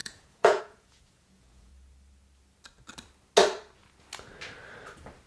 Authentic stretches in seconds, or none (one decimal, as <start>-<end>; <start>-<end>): 1.7-5.3